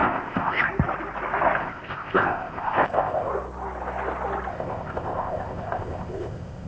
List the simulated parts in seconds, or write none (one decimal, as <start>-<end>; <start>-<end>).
0.0-0.6; 1.6-3.3; 4.5-6.7